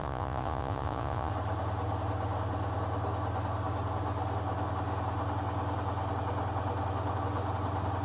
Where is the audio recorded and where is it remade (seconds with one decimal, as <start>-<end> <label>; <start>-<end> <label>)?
0.0-1.3 remade; 1.3-8.0 recorded

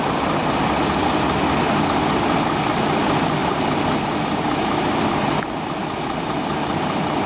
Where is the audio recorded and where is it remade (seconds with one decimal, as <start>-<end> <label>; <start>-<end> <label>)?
0.0-7.3 recorded

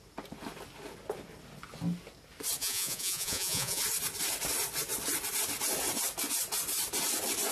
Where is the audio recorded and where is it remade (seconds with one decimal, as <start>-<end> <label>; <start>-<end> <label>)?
0.0-2.6 recorded; 2.6-3.8 remade; 3.8-7.5 recorded

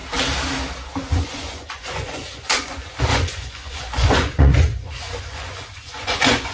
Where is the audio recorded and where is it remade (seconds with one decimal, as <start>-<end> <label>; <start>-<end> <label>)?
0.0-1.1 recorded; 1.1-6.5 remade